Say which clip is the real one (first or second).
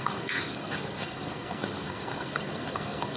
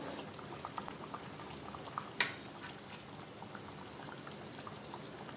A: second